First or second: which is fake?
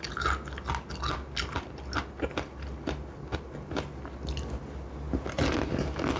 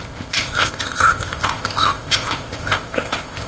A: second